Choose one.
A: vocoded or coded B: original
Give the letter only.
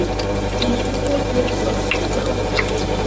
B